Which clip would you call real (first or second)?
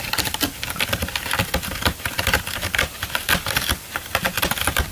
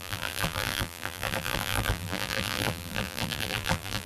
first